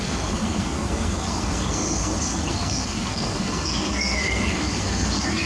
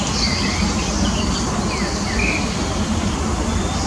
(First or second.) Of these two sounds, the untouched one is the second